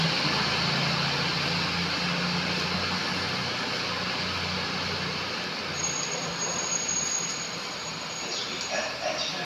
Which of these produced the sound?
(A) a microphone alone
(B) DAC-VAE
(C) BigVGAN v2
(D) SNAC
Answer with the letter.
A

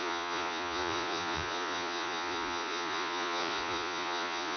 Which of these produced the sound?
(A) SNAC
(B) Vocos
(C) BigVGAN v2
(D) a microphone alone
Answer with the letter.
B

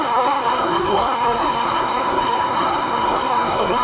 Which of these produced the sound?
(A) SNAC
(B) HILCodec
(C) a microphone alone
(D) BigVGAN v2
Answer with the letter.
A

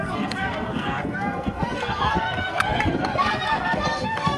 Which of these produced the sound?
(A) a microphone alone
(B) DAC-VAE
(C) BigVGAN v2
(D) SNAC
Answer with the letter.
D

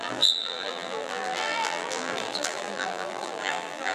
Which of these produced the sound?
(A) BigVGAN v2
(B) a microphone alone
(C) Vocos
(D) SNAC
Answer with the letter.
A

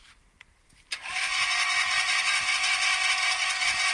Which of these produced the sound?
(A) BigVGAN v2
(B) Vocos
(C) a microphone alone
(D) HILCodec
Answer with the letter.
C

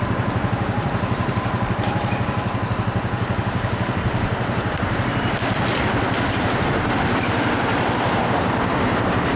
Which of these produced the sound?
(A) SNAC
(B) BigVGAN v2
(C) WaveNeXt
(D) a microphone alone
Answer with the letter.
B